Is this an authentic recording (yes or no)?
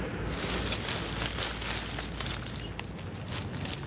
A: yes